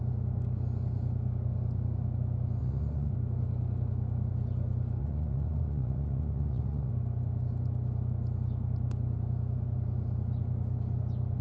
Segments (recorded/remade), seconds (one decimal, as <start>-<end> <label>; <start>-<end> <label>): 0.0-2.6 recorded; 2.6-3.1 remade; 3.1-5.0 recorded; 5.0-6.9 remade; 6.9-11.4 recorded